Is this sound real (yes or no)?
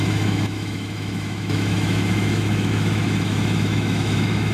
no